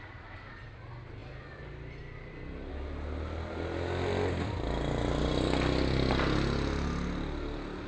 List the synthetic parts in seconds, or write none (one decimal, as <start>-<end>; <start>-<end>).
none